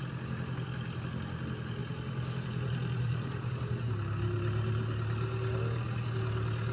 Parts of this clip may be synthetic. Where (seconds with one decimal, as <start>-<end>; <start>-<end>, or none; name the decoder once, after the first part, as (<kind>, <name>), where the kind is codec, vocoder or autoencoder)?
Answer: 1.8-3.5 (vocoder, BigVGAN v2)